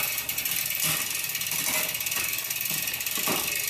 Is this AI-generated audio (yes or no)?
no